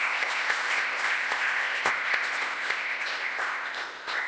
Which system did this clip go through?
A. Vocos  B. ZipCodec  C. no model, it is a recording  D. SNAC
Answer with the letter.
B